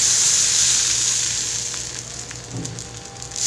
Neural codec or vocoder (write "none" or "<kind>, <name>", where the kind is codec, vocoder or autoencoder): none